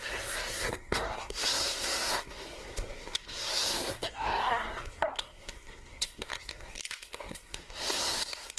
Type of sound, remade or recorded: remade